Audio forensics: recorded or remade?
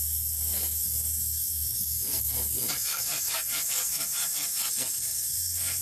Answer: remade